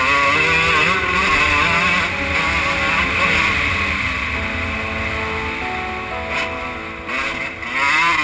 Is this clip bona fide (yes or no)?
yes